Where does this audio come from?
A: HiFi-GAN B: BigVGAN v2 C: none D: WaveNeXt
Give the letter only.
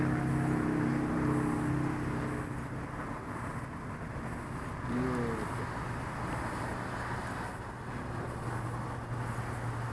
C